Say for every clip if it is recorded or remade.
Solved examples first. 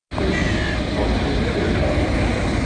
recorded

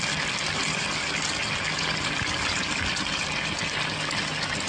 recorded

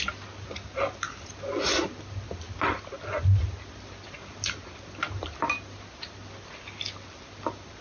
recorded